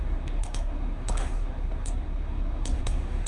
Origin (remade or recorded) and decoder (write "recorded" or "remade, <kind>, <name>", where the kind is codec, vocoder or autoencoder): remade, codec, SNAC